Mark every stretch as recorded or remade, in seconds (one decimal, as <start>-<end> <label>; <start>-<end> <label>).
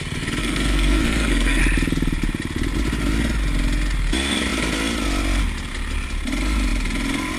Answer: 0.0-0.4 recorded; 0.4-1.6 remade; 1.6-7.4 recorded